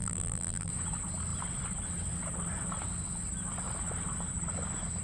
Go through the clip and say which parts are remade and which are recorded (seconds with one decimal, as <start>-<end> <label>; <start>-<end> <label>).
0.0-0.7 remade; 0.7-5.0 recorded